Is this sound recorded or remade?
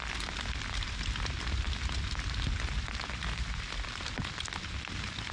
recorded